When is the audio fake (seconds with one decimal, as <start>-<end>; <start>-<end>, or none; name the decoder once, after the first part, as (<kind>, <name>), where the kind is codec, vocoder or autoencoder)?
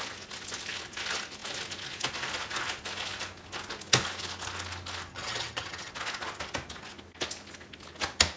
5.1-5.9 (vocoder, HiFi-GAN)